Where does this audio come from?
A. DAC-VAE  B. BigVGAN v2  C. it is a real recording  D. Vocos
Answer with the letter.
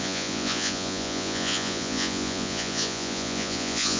D